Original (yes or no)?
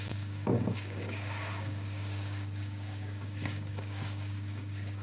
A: no